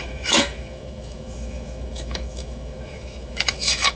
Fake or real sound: fake